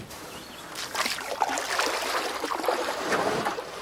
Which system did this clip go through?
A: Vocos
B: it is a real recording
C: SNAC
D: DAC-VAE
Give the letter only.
B